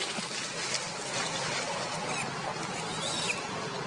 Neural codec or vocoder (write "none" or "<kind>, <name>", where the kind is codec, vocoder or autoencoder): none